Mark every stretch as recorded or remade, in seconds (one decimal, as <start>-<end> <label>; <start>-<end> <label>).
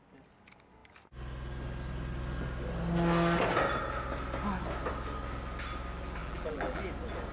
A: 0.0-6.2 recorded; 6.2-6.8 remade; 6.8-7.3 recorded